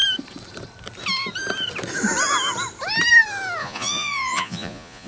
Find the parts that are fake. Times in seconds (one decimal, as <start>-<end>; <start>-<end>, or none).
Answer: 3.6-5.1